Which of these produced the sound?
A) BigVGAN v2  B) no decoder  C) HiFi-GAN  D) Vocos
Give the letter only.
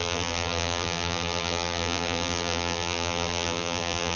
A